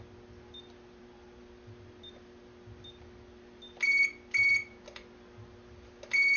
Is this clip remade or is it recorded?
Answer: recorded